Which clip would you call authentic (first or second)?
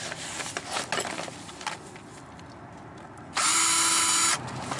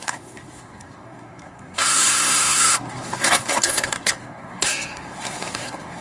first